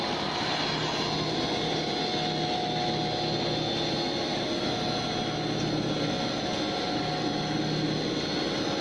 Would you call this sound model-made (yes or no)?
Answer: no